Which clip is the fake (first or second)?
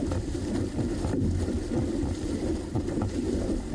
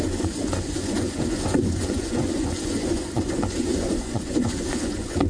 second